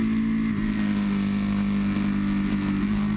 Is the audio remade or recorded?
recorded